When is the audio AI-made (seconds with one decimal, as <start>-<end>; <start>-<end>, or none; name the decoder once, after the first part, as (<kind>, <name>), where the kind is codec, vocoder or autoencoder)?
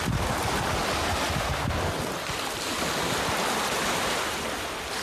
none